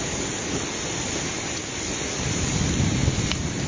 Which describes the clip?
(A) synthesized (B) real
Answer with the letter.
B